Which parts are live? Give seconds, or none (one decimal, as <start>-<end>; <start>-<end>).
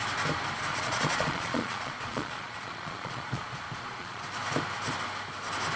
0.0-0.7; 4.2-5.8